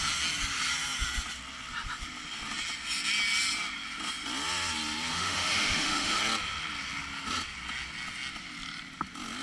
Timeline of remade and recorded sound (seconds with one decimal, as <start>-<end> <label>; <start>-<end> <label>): 0.0-5.1 recorded; 5.1-6.2 remade; 6.2-9.4 recorded